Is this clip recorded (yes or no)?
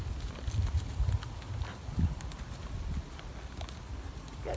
yes